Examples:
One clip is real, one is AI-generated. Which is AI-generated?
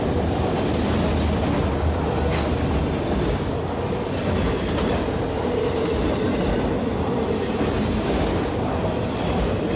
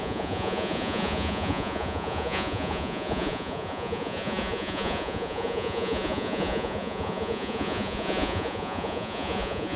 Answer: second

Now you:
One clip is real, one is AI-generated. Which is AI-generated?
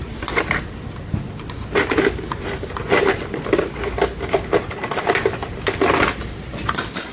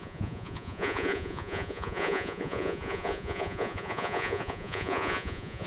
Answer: second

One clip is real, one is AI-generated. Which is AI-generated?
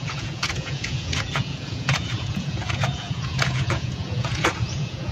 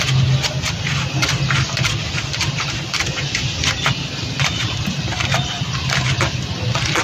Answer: first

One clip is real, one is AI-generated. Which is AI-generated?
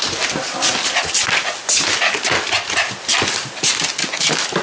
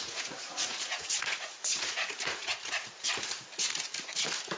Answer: second